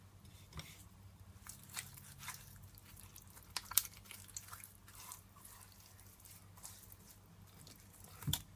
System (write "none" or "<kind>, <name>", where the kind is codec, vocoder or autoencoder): none